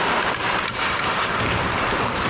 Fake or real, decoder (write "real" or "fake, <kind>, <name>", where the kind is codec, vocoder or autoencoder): fake, vocoder, BigVGAN v2